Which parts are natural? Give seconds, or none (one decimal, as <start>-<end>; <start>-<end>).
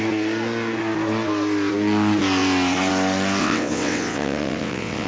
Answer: 0.0-3.4